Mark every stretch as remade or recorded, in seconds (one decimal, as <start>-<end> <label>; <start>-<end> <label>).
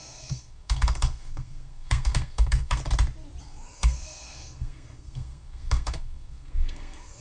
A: 0.0-2.8 remade; 2.8-3.4 recorded; 3.4-7.2 remade